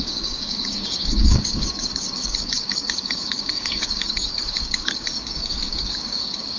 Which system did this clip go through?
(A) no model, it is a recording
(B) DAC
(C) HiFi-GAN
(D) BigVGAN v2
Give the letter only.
B